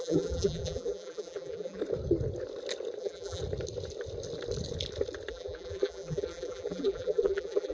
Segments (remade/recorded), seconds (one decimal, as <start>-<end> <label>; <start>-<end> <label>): 0.0-1.8 remade; 1.8-3.0 recorded; 3.0-3.4 remade; 3.4-5.3 recorded; 5.3-7.7 remade